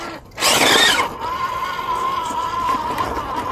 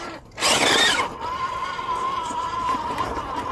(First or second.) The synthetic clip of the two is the second